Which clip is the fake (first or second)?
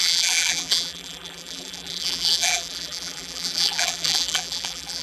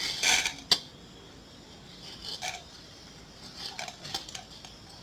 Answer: first